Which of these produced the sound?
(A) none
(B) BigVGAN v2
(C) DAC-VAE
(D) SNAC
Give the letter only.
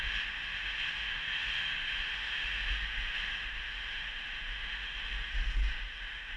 C